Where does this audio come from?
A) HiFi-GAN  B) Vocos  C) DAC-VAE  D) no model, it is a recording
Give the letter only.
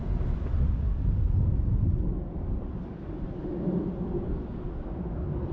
D